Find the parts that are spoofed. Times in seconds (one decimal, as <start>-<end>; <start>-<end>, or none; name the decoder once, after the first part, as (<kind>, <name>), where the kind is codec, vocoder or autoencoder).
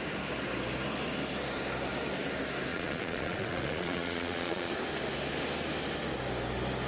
2.7-4.7 (vocoder, Vocos)